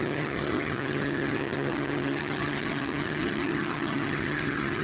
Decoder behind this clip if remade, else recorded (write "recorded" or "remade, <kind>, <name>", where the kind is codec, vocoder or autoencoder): remade, vocoder, HiFi-GAN